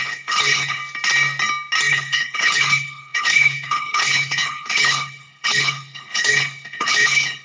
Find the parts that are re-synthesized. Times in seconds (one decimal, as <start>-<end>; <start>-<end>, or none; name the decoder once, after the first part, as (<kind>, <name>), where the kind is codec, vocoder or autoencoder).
0.0-0.8 (codec, HILCodec); 1.9-7.4